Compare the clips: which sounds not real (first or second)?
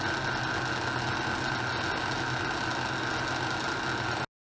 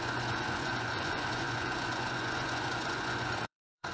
second